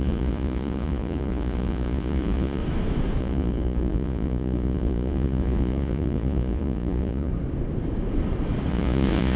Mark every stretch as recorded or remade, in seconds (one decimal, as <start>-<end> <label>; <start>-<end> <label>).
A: 0.0-2.6 remade; 2.6-3.2 recorded; 3.2-7.3 remade; 7.3-8.7 recorded; 8.7-9.4 remade